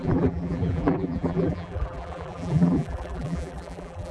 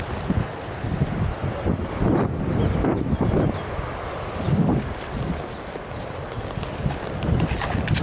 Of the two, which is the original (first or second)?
second